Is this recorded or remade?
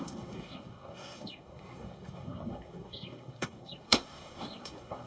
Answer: remade